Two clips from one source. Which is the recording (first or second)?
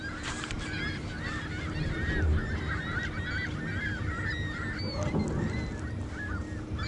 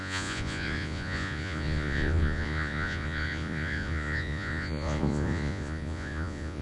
first